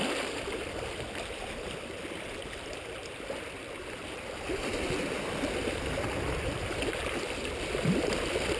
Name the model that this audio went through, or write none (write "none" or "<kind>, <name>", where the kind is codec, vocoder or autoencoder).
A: vocoder, BigVGAN v2